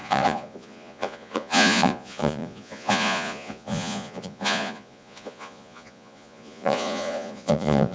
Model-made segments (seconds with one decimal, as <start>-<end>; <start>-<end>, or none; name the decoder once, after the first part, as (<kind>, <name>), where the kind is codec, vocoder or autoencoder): 0.0-7.9 (vocoder, Vocos)

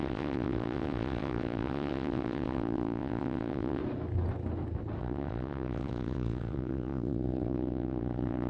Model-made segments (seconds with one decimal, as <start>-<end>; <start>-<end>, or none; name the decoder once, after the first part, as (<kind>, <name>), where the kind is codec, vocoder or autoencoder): 0.0-3.8 (vocoder, WaveNeXt); 5.0-8.5

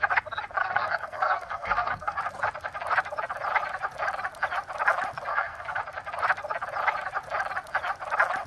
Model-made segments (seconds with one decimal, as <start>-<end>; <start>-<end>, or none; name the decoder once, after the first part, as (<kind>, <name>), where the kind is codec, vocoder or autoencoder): 0.6-2.2 (codec, SNAC); 5.3-5.8

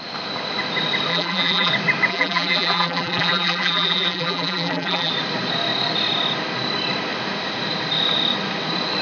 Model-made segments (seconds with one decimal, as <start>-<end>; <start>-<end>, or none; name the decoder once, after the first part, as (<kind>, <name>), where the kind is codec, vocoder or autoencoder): 1.1-1.7 (vocoder, BigVGAN v2); 2.1-5.1

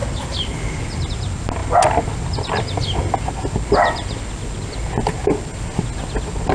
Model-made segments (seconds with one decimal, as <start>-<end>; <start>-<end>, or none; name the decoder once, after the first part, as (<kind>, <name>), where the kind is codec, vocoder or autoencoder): none